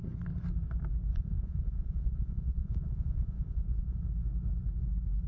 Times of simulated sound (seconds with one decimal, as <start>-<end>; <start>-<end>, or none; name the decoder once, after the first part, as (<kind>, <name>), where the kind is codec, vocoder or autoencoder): 1.1-4.0 (vocoder, Vocos)